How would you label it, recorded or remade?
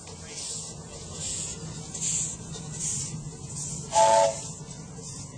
recorded